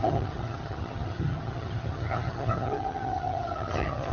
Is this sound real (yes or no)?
no